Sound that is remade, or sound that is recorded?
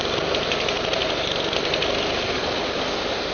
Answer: recorded